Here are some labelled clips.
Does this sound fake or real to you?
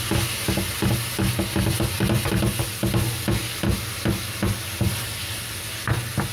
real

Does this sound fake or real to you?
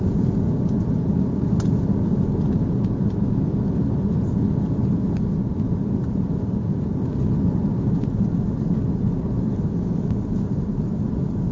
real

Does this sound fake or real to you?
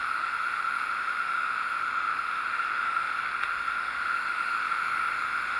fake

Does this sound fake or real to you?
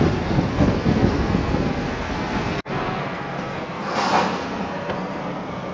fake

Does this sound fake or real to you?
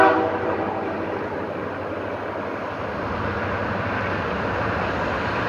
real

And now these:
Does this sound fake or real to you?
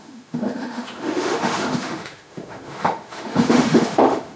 fake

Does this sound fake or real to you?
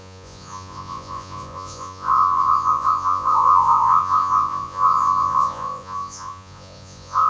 fake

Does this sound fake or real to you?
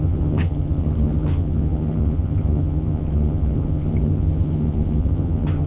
fake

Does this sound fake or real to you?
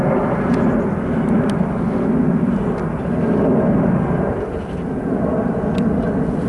real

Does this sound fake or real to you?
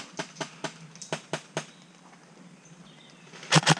real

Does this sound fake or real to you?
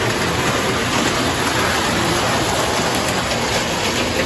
real